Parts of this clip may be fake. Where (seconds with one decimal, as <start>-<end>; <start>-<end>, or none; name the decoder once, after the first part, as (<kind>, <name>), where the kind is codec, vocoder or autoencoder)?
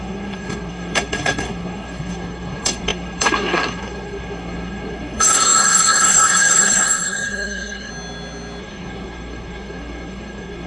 0.0-7.9 (codec, SNAC); 8.6-10.7